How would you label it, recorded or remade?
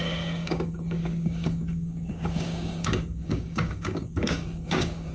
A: remade